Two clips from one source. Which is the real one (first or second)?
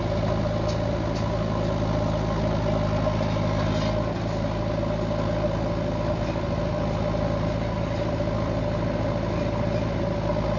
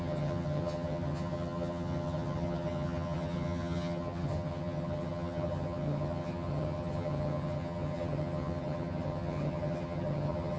first